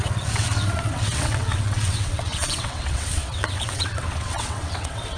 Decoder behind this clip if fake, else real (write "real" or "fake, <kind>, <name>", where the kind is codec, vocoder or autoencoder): fake, vocoder, WaveNeXt